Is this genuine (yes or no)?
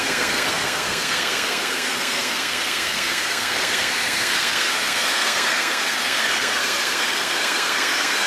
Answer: no